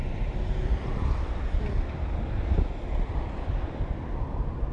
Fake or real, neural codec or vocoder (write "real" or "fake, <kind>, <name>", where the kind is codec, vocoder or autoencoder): fake, vocoder, BigVGAN v2